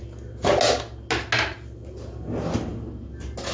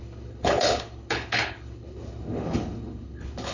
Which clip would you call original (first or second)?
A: first